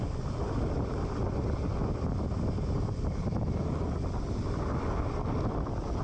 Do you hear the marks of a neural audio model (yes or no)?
no